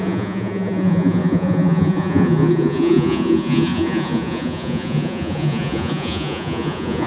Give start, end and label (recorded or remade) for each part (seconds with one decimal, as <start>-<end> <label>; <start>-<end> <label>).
0.0-7.1 remade